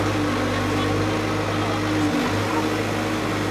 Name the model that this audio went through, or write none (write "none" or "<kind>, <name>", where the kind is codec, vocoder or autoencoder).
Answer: none